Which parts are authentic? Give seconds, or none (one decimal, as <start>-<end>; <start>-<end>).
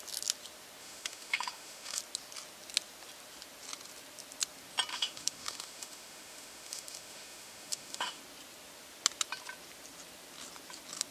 0.0-0.8; 2.0-4.9; 8.2-11.1